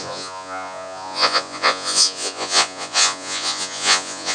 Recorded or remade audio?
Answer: remade